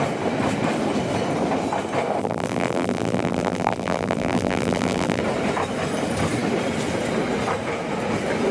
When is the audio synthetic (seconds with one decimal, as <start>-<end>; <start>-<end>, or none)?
2.2-5.2